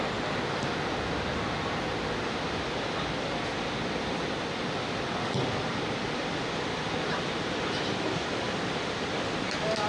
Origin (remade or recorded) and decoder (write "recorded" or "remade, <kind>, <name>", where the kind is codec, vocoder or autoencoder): recorded